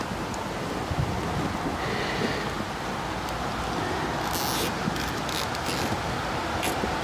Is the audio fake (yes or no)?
no